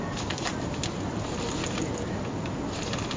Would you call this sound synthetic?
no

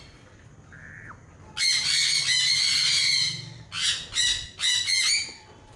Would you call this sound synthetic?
no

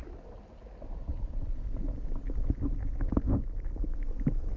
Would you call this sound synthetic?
no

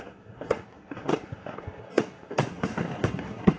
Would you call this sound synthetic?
yes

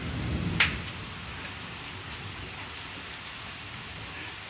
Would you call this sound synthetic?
no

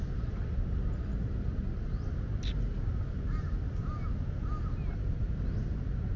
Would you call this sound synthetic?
no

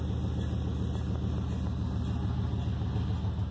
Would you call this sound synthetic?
no